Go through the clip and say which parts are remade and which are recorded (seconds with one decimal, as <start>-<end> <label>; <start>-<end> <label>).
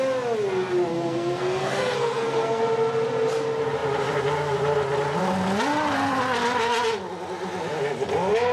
0.0-0.9 recorded; 0.9-2.6 remade; 2.6-8.5 recorded